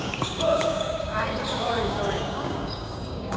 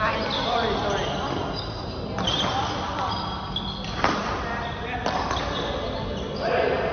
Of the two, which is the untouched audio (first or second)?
second